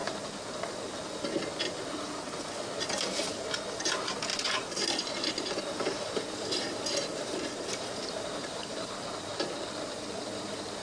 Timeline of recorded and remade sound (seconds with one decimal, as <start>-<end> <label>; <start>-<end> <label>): 0.0-3.7 recorded; 3.7-9.3 remade; 9.3-10.2 recorded; 10.2-10.8 remade